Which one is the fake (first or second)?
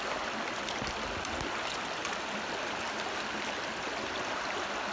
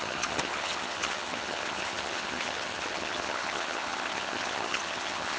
second